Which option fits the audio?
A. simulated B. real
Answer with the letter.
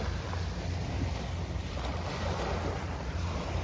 B